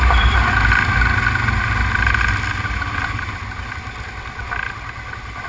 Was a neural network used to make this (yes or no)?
no